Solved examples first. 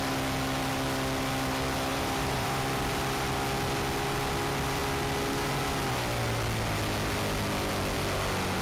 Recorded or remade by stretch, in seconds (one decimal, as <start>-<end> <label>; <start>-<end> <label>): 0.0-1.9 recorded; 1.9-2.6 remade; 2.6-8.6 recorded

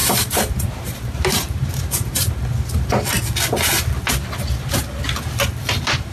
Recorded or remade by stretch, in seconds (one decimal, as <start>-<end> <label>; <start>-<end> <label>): 0.0-2.3 remade; 2.3-6.1 recorded

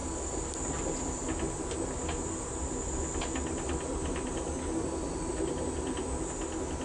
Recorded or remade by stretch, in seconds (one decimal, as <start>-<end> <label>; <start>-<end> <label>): 0.0-3.9 recorded; 3.9-4.5 remade; 4.5-6.8 recorded

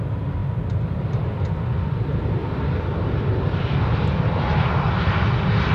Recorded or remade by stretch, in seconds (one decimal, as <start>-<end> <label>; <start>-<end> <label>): 0.0-2.4 recorded; 2.4-4.3 remade; 4.3-5.7 recorded